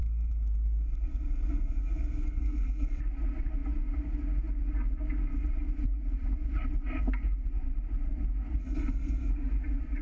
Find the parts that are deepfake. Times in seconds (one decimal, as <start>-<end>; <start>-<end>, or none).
0.0-3.0; 8.6-9.3